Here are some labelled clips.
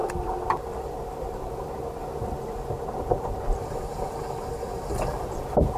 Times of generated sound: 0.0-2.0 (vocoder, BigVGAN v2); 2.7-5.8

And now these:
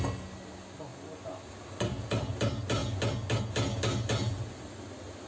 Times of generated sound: none

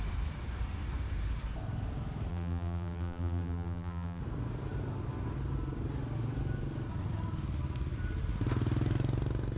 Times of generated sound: 2.3-4.2 (vocoder, BigVGAN v2)

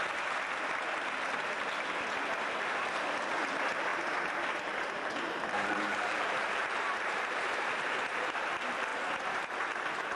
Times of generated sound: 3.9-8.2 (vocoder, BigVGAN v2); 8.9-10.2

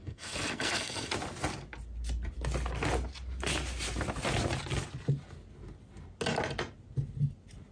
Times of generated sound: 0.0-1.1 (codec, SNAC)